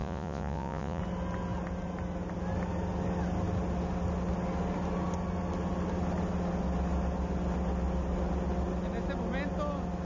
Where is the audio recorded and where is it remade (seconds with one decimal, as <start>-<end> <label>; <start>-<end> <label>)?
0.0-1.0 remade; 1.0-10.0 recorded